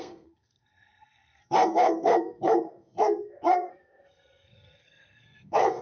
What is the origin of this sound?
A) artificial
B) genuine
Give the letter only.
A